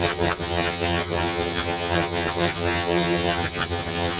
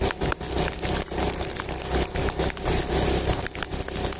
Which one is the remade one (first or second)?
first